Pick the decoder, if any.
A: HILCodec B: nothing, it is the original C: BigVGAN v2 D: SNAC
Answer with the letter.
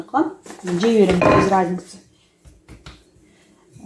B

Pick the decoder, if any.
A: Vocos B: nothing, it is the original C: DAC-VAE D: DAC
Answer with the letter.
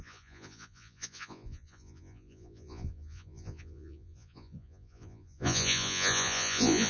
A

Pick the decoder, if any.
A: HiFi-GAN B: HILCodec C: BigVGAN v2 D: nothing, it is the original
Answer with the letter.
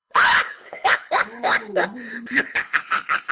B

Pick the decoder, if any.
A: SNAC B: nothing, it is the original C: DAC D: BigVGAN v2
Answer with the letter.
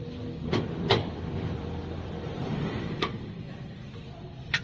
D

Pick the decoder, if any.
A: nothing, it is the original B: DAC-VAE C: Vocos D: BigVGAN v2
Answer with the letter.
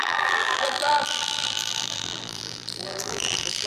D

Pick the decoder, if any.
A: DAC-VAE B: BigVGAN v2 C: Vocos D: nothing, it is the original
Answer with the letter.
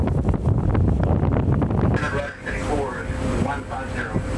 D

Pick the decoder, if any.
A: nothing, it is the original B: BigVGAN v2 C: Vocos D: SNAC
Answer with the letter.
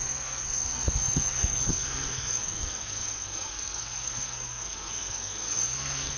D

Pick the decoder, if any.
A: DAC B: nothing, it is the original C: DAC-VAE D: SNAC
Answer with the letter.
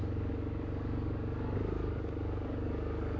A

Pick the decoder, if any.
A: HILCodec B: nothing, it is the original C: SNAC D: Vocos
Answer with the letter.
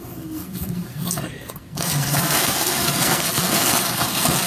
C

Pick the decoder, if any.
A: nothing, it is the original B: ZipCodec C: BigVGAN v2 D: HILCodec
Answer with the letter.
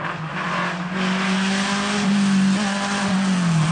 A